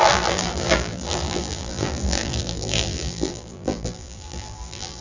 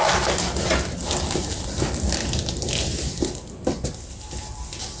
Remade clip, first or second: first